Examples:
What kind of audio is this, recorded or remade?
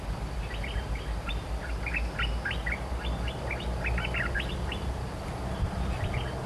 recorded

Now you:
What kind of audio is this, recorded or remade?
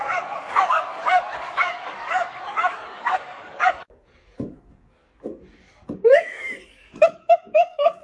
remade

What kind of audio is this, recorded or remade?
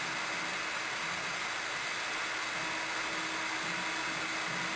recorded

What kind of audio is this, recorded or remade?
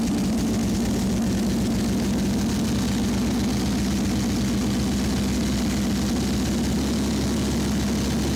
recorded